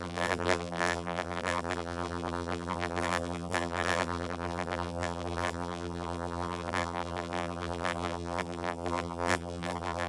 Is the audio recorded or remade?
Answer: remade